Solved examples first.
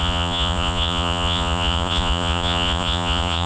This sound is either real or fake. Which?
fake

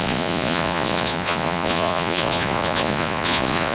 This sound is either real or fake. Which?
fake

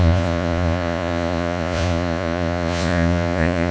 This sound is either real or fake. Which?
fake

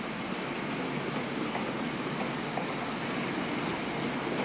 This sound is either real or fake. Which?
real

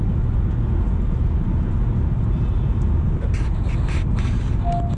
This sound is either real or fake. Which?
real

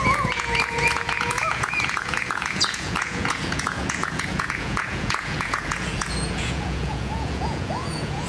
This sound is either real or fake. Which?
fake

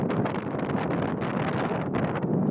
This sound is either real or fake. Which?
real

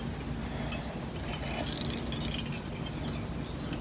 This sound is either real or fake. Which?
real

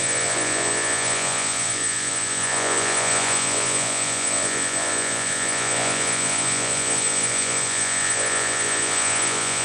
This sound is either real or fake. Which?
fake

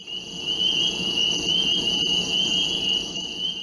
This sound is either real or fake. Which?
fake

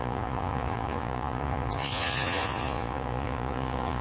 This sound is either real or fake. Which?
fake